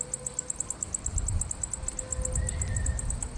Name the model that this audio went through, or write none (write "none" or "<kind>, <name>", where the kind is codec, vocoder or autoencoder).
none